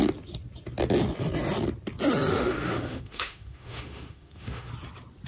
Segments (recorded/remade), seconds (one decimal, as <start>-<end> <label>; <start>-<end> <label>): 0.0-2.3 recorded; 2.3-4.7 remade; 4.7-5.3 recorded